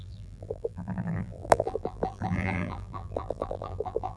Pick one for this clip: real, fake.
fake